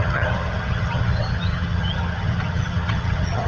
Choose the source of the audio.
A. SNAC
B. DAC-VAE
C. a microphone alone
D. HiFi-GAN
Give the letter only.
D